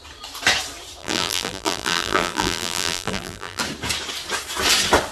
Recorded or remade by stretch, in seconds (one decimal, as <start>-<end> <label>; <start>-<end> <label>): 0.0-1.0 recorded; 1.0-3.6 remade; 3.6-5.1 recorded